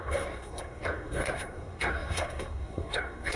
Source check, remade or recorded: remade